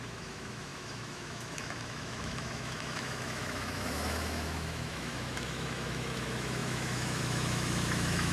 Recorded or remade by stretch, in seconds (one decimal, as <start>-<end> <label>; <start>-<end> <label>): 0.0-8.3 remade

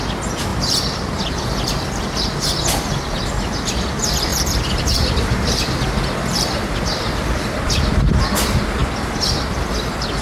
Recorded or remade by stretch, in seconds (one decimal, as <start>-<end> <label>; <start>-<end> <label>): 0.0-0.5 recorded; 0.5-1.2 remade; 1.2-4.3 recorded; 4.3-8.2 remade; 8.2-8.8 recorded; 8.8-9.7 remade; 9.7-10.2 recorded

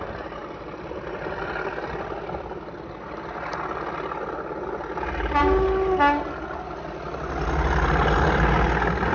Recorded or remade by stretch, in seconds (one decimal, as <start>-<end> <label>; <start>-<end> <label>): 0.0-9.1 recorded

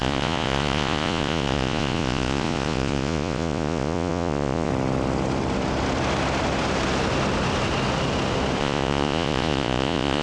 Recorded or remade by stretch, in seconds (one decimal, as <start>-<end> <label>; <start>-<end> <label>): 0.0-4.7 remade; 4.7-8.6 recorded; 8.6-10.2 remade

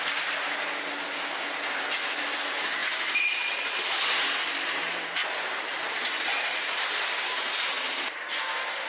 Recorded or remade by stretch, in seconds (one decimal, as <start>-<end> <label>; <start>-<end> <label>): 0.0-8.9 recorded

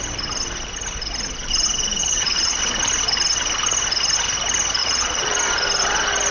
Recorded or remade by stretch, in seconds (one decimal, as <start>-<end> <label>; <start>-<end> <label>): 0.0-2.0 recorded; 2.0-2.6 remade; 2.6-4.8 recorded; 4.8-5.4 remade; 5.4-6.3 recorded

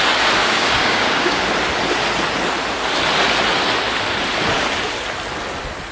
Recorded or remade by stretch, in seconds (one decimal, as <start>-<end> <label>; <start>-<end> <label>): 0.0-0.4 recorded; 0.4-1.4 remade; 1.4-5.9 recorded

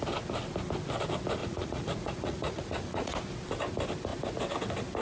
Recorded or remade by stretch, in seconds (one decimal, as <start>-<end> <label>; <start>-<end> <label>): 0.0-1.4 recorded; 1.4-3.2 remade; 3.2-5.0 recorded